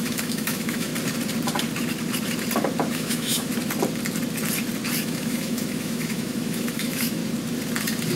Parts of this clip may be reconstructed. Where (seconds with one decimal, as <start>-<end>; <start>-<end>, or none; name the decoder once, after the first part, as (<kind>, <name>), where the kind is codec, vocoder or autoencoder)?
0.0-0.9 (autoencoder, DAC-VAE); 2.9-3.5; 5.0-7.2